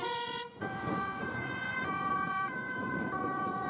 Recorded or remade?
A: remade